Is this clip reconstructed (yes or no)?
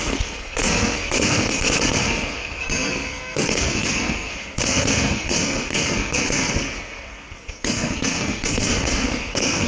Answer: yes